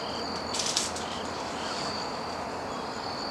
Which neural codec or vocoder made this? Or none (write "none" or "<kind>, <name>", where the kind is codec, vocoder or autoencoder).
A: none